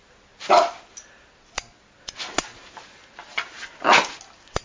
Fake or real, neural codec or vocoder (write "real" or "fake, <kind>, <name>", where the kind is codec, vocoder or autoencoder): real